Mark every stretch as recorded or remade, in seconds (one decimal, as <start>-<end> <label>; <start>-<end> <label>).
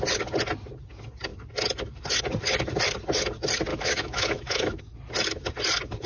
0.0-3.7 recorded; 3.7-4.8 remade; 4.8-6.1 recorded